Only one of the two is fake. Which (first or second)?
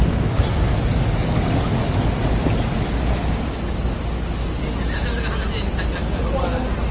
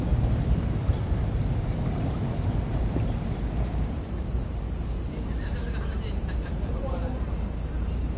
second